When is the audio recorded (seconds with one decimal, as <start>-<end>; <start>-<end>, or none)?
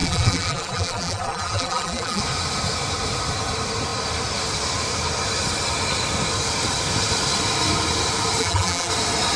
2.2-8.4; 8.9-9.4